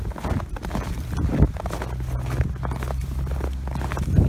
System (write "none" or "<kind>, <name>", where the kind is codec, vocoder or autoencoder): none